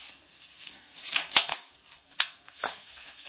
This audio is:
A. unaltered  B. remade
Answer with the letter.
B